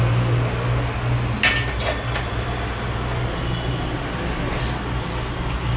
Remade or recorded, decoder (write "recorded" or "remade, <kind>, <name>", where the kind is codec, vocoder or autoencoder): recorded